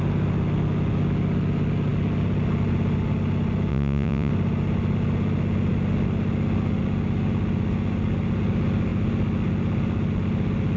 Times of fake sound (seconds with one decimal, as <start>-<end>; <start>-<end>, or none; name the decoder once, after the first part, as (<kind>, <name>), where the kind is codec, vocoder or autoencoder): 3.7-4.3 (vocoder, Vocos)